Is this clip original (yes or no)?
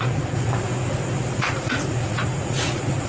no